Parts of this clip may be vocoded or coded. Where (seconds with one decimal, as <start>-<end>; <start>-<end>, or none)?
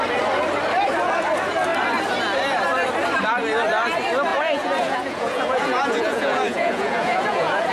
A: 4.3-7.7